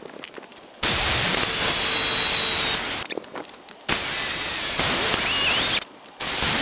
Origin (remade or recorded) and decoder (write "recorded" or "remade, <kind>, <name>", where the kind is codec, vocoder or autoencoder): recorded